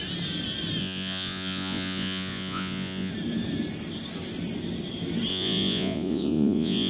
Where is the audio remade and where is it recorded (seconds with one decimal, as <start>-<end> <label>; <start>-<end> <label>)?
0.0-0.8 recorded; 0.8-3.1 remade; 3.1-5.3 recorded; 5.3-6.9 remade